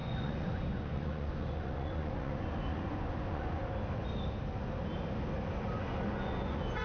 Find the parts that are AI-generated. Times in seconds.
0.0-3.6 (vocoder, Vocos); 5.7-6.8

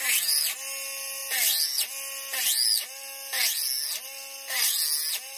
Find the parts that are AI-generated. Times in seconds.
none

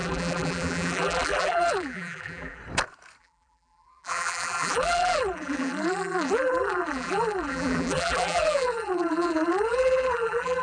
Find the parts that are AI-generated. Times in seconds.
0.0-2.6 (vocoder, BigVGAN v2); 3.2-10.6

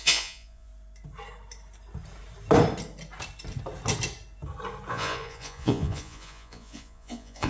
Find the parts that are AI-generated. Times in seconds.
0.0-0.7 (vocoder, Vocos); 4.9-7.5

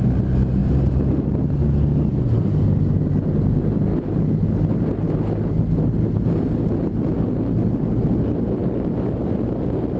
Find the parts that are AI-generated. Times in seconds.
none

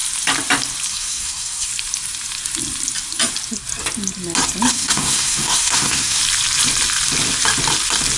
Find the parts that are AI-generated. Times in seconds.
0.9-1.7 (codec, SNAC); 4.7-6.2

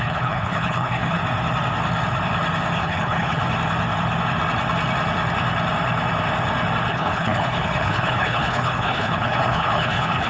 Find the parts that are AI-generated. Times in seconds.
0.0-1.2 (codec, HILCodec); 2.8-3.4; 6.9-10.3